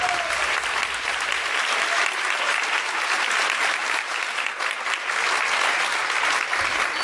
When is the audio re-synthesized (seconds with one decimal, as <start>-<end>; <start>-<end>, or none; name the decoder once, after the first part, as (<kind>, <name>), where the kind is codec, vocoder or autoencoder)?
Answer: none